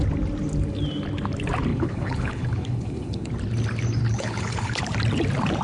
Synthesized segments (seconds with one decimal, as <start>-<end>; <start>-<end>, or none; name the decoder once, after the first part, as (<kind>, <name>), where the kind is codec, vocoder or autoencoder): 1.7-3.3 (codec, HILCodec); 4.0-4.8